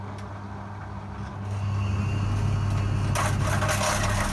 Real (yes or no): yes